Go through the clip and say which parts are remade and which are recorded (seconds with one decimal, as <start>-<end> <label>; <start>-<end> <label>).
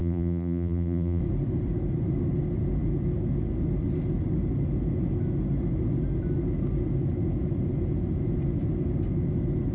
0.0-1.2 remade; 1.2-9.7 recorded